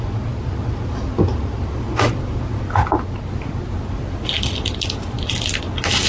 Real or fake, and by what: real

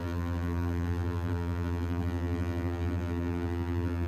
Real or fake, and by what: fake, vocoder, BigVGAN v2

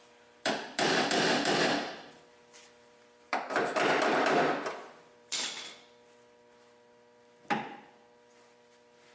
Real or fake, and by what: fake, vocoder, BigVGAN v2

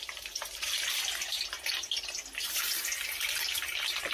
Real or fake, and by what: real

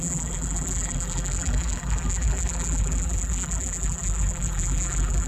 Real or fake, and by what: fake, vocoder, BigVGAN v2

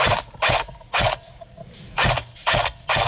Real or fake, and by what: fake, vocoder, BigVGAN v2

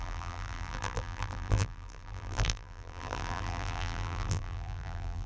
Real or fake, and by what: fake, vocoder, BigVGAN v2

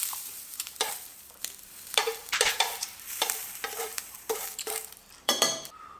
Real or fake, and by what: fake, vocoder, BigVGAN v2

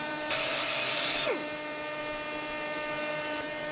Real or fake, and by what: fake, vocoder, BigVGAN v2